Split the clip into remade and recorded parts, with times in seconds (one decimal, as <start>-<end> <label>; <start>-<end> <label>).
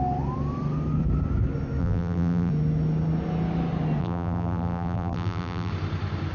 0.0-1.8 recorded; 1.8-2.5 remade; 2.5-4.0 recorded; 4.0-5.7 remade; 5.7-6.3 recorded